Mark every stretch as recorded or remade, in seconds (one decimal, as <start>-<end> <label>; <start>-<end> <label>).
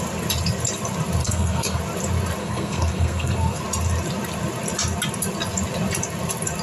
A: 0.0-1.2 recorded; 1.2-1.8 remade; 1.8-2.4 recorded; 2.4-3.6 remade; 3.6-6.6 recorded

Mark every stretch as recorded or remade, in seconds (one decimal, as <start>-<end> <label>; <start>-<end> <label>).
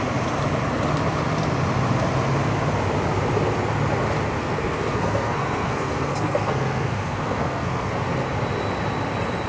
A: 0.0-4.4 recorded; 4.4-7.9 remade; 7.9-9.5 recorded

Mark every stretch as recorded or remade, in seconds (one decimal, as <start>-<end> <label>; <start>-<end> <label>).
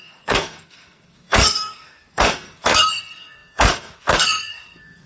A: 0.0-5.1 remade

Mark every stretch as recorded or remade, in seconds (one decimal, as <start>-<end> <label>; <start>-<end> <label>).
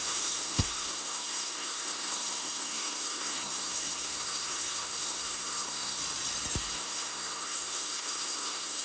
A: 0.0-6.0 remade; 6.0-6.7 recorded; 6.7-8.8 remade